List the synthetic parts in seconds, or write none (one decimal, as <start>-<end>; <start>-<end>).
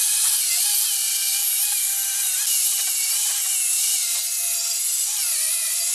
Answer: none